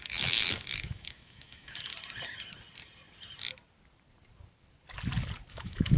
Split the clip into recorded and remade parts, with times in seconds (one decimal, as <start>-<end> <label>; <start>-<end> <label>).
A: 0.0-1.9 remade; 1.9-5.5 recorded; 5.5-6.0 remade